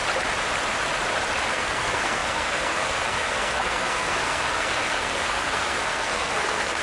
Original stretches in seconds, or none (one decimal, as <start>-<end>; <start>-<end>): 0.0-1.5